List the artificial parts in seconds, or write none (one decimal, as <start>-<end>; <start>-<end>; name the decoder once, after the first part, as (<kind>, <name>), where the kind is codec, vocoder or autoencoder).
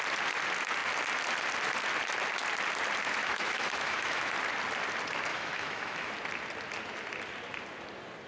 3.2-4.3 (autoencoder, DAC-VAE); 5.3-6.1